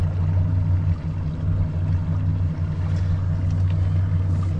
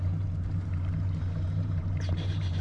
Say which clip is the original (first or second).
first